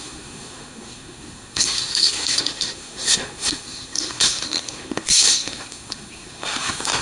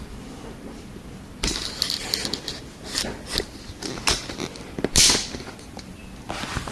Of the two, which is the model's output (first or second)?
first